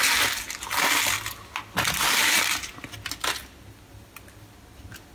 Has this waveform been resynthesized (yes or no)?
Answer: no